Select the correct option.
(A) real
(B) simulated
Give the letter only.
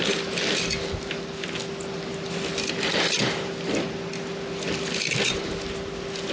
A